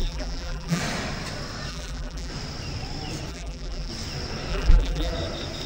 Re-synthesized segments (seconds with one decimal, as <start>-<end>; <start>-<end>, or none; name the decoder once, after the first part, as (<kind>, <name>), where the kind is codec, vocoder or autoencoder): 0.0-0.8 (vocoder, BigVGAN v2); 1.7-2.3; 3.3-3.9; 4.5-5.1